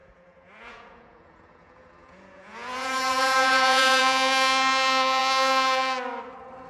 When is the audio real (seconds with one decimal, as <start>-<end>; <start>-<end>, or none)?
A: 4.0-6.7